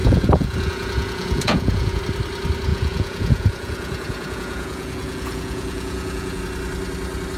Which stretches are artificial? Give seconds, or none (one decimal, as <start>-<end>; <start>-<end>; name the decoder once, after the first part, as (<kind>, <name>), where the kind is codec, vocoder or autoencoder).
0.0-2.0 (vocoder, Vocos); 2.7-6.4